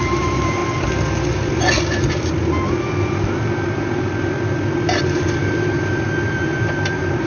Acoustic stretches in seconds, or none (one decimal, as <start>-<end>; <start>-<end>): 0.6-5.0